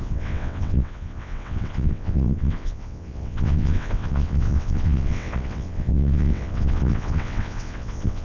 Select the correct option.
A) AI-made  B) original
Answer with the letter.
A